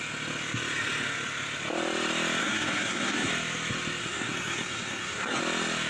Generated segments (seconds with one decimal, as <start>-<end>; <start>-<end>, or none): 2.4-3.3; 4.0-5.4

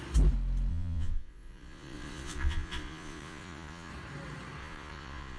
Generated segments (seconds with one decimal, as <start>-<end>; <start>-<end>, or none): 0.7-3.9; 4.6-5.4

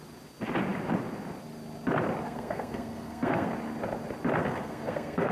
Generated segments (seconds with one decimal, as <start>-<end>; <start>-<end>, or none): 2.2-3.5; 4.4-5.3

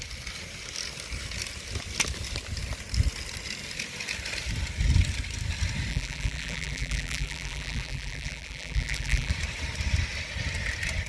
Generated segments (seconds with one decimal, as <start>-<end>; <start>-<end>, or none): 5.9-9.3

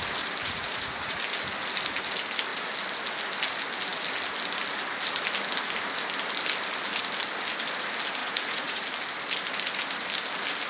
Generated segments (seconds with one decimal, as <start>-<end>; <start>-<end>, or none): 0.4-1.2; 8.2-8.8